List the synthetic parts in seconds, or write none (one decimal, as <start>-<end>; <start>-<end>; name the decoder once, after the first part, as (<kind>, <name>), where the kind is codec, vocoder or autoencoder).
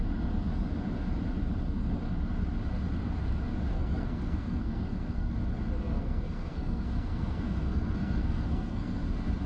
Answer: 3.7-5.3 (codec, SNAC); 5.8-9.0